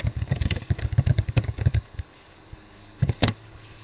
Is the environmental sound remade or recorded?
remade